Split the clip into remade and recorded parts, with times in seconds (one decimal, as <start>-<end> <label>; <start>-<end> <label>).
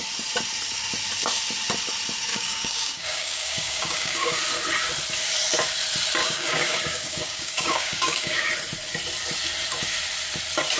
0.0-2.3 recorded; 2.3-4.4 remade; 4.4-6.2 recorded; 6.2-8.5 remade; 8.5-10.8 recorded